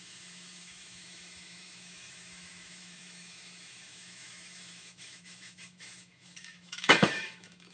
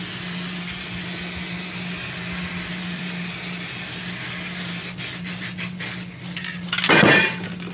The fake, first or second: first